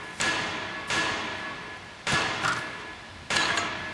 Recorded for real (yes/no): yes